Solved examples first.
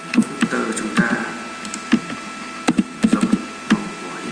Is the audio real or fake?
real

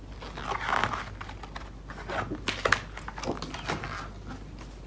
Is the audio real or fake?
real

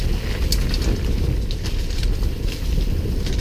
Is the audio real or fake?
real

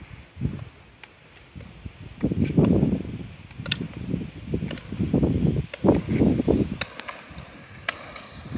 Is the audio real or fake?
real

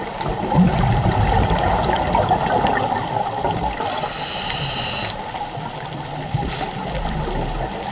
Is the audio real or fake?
real